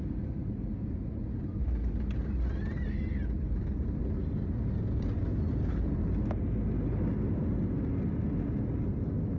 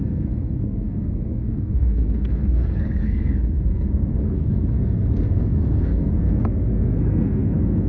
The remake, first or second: second